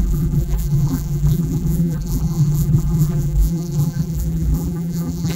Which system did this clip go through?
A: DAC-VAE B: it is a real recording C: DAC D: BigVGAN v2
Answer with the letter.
D